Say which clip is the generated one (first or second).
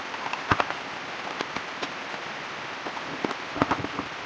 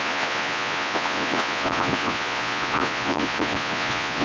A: second